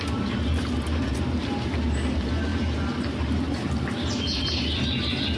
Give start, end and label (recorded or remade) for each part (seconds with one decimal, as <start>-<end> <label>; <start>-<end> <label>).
0.0-5.4 recorded